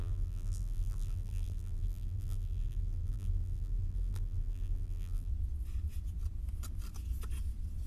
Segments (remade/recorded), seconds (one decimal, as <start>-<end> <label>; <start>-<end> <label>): 0.0-5.3 remade; 5.3-7.9 recorded